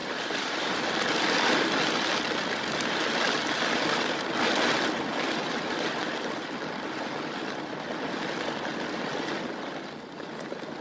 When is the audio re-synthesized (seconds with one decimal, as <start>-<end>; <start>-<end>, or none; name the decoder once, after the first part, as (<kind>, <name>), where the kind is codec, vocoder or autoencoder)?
0.0-0.8 (vocoder, BigVGAN v2)